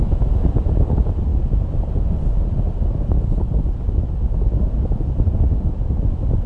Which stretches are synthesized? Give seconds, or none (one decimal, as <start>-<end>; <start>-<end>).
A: none